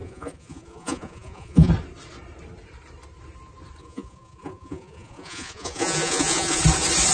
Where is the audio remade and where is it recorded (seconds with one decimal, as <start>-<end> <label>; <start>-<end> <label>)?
0.0-1.7 remade; 1.7-3.8 recorded; 3.8-6.6 remade; 6.6-7.1 recorded

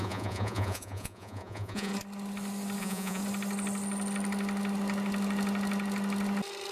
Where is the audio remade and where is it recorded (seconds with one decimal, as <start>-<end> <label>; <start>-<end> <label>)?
0.0-1.9 remade; 1.9-2.8 recorded; 2.8-3.2 remade; 3.2-6.7 recorded

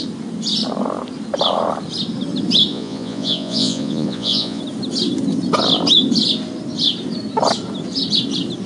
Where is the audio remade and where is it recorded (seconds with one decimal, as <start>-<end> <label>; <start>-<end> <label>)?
0.0-2.7 recorded; 2.7-4.6 remade; 4.6-8.7 recorded